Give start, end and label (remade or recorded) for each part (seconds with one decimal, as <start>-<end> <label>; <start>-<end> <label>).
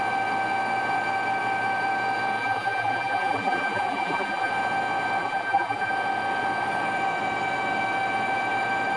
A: 0.0-2.4 recorded; 2.4-4.5 remade; 4.5-5.2 recorded; 5.2-5.9 remade; 5.9-9.0 recorded